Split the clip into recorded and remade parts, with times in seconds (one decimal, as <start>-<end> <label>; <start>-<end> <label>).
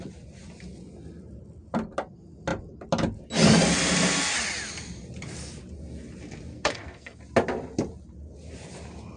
0.0-6.5 recorded; 6.5-7.2 remade; 7.2-9.2 recorded